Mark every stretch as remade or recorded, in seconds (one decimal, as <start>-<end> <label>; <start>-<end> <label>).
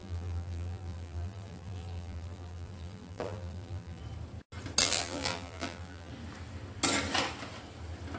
0.0-4.0 remade; 4.0-4.8 recorded; 4.8-6.1 remade; 6.1-8.2 recorded